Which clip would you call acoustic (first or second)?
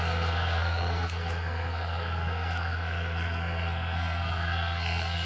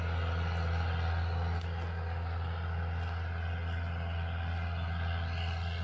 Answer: second